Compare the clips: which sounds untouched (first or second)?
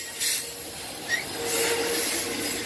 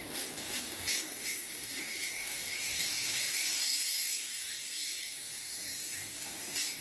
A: first